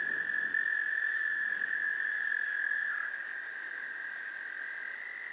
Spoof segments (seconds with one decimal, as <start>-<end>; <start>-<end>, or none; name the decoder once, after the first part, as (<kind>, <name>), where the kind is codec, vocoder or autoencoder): 1.1-4.3 (codec, DAC)